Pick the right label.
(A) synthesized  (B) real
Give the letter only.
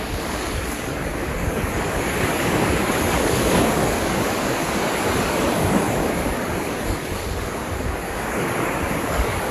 A